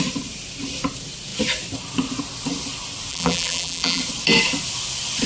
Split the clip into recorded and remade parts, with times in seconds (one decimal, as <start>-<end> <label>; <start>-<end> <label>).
0.0-3.1 recorded; 3.1-4.0 remade; 4.0-5.3 recorded